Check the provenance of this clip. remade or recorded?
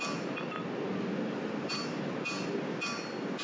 recorded